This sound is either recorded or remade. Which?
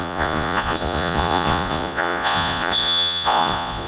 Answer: remade